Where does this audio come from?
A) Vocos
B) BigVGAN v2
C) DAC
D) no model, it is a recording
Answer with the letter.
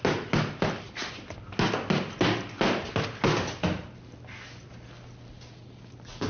D